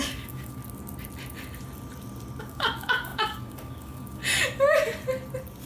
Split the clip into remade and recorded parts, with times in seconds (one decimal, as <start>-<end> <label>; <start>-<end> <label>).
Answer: 0.0-0.6 remade; 0.6-2.4 recorded; 2.4-4.2 remade; 4.2-5.7 recorded